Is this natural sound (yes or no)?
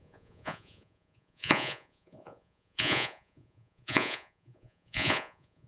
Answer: no